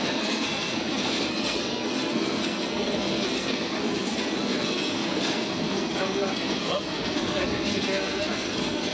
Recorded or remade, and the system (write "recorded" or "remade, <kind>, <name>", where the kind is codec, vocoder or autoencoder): remade, codec, SNAC